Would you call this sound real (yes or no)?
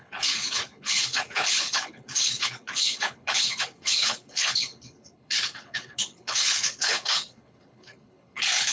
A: no